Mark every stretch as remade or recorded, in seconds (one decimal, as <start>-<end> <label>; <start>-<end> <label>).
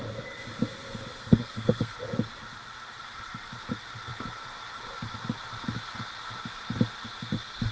0.0-1.2 recorded; 1.2-1.9 remade; 1.9-7.7 recorded